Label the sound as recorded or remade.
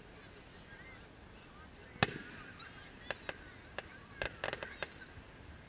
recorded